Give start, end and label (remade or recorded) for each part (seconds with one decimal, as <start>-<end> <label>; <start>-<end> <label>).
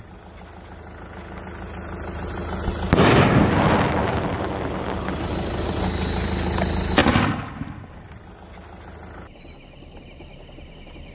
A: 0.0-11.1 recorded